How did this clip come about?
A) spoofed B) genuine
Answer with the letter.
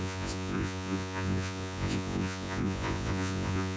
A